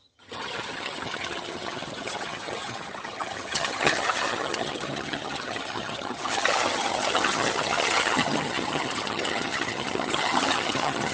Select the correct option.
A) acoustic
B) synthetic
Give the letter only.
B